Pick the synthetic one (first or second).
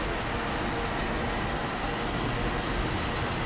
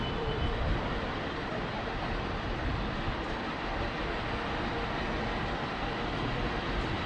second